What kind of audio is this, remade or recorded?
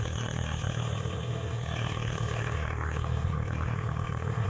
remade